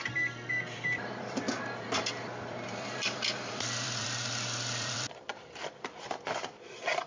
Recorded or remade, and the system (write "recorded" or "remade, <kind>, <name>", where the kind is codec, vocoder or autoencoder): remade, vocoder, BigVGAN v2